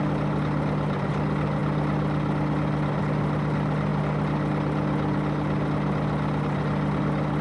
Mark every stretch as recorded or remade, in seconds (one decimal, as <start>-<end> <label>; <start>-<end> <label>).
0.0-7.4 recorded